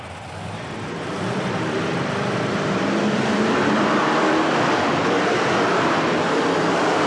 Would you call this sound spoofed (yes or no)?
yes